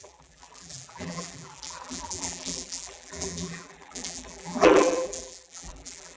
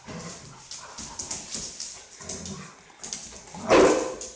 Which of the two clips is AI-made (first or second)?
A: first